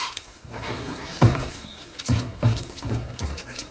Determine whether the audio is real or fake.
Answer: fake